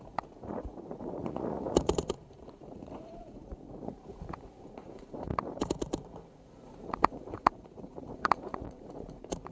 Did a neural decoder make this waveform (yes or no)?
yes